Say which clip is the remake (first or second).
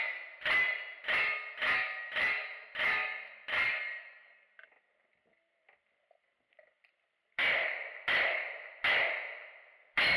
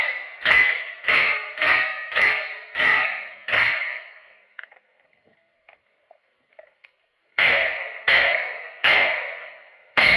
second